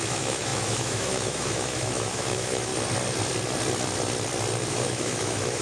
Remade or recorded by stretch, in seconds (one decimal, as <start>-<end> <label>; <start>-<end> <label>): 0.0-2.7 remade; 2.7-4.7 recorded; 4.7-5.6 remade